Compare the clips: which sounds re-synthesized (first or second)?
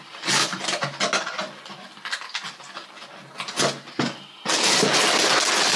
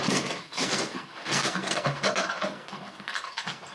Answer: second